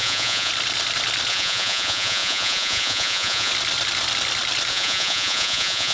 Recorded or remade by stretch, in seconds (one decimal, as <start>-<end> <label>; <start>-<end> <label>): 0.0-0.5 remade; 0.5-1.3 recorded; 1.3-3.5 remade; 3.5-4.7 recorded; 4.7-5.9 remade